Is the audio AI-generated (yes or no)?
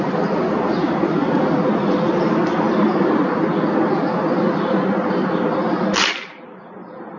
no